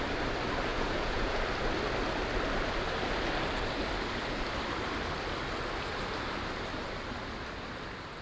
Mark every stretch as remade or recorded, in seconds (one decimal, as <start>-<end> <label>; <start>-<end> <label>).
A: 0.0-0.7 recorded; 0.7-1.4 remade; 1.4-8.2 recorded